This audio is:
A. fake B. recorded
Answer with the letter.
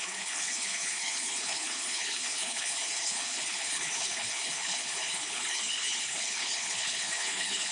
A